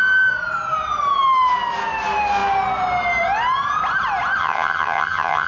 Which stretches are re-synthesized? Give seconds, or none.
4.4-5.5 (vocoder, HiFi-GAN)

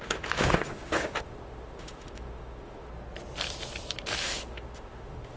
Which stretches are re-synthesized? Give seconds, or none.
0.0-2.9 (autoencoder, DAC-VAE); 4.2-5.4

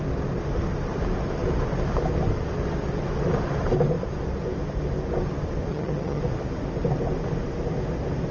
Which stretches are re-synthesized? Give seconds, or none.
5.7-6.2 (vocoder, HiFi-GAN)